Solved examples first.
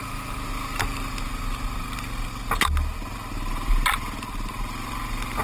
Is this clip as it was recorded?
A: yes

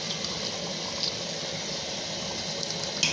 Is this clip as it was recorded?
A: yes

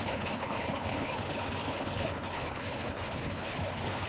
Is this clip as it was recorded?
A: no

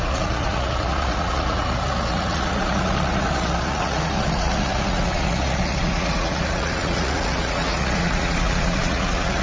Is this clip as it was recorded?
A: no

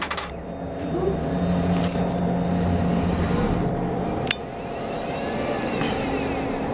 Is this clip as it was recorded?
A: yes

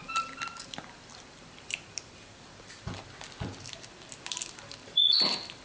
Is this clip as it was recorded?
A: no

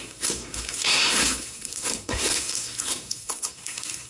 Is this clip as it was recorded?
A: no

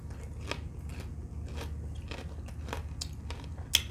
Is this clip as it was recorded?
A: yes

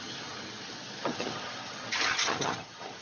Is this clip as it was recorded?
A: no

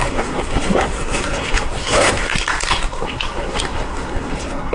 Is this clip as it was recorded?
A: no